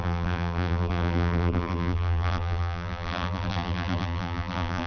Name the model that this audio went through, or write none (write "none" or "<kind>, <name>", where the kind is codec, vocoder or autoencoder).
vocoder, BigVGAN v2